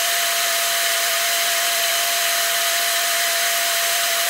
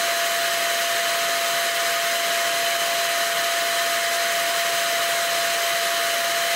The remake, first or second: first